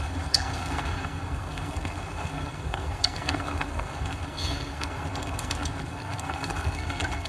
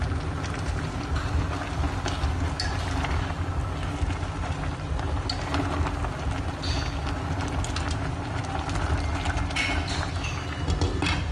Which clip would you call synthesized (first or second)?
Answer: first